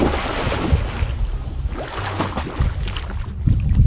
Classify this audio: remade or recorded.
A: recorded